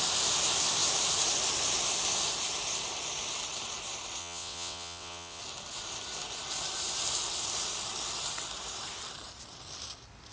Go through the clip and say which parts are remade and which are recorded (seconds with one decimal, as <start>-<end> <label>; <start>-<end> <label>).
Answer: 0.0-4.2 recorded; 4.2-5.4 remade; 5.4-10.3 recorded